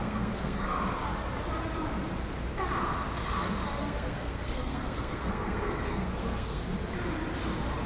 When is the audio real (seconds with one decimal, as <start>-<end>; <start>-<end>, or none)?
0.8-3.8; 6.6-7.9